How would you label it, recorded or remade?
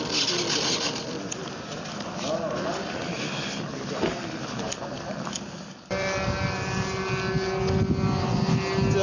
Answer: recorded